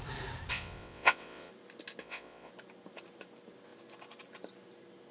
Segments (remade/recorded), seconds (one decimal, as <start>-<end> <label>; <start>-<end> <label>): 0.0-0.5 recorded; 0.5-1.5 remade; 1.5-2.0 recorded; 2.0-2.5 remade; 2.5-5.1 recorded